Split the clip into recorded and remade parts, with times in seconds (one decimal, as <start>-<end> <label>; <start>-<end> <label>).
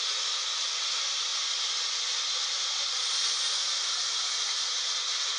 0.0-5.4 recorded